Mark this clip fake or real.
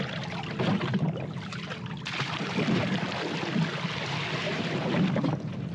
real